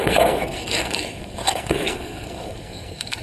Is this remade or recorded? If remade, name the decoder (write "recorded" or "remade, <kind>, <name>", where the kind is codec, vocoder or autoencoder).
remade, codec, SNAC